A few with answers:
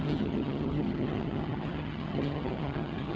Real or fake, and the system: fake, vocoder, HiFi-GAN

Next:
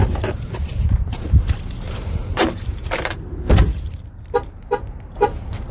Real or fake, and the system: fake, vocoder, BigVGAN v2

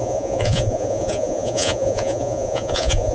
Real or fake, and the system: fake, vocoder, Vocos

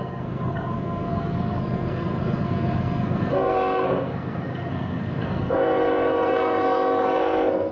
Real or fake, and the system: fake, codec, SNAC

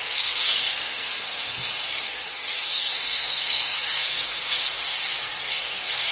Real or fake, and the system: fake, codec, SNAC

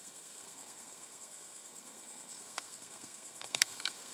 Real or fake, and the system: fake, codec, SNAC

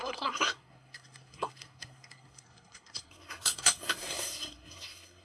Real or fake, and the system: fake, codec, SNAC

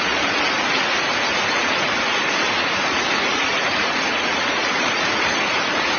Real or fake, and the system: fake, vocoder, Vocos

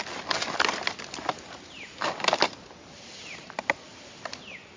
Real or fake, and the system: real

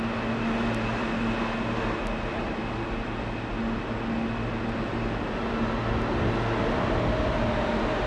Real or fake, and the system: real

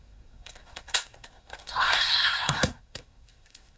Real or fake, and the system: fake, codec, SNAC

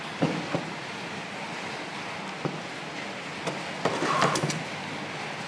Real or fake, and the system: real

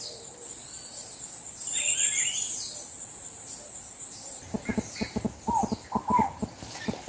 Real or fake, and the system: fake, vocoder, BigVGAN v2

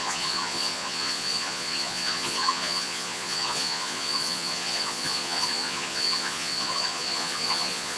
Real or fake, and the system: fake, vocoder, Vocos